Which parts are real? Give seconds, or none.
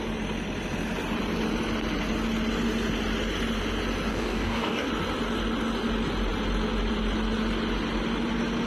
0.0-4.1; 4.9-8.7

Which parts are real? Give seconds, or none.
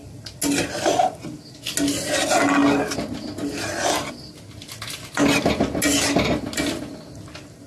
0.0-7.7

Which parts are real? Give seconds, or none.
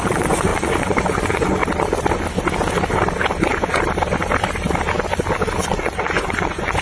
1.6-5.7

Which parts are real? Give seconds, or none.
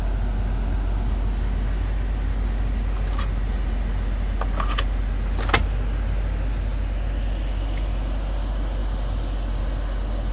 0.0-10.3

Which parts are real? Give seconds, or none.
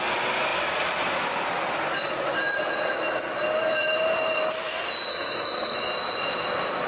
0.0-5.1; 5.9-6.9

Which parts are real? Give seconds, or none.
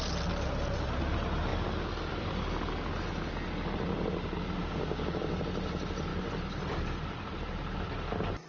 0.0-4.6; 5.2-8.5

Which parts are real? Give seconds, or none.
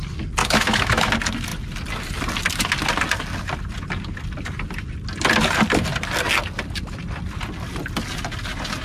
0.0-0.4; 1.1-8.8